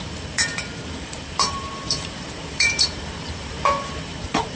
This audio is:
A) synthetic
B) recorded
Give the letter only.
A